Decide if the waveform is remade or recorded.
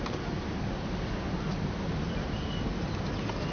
recorded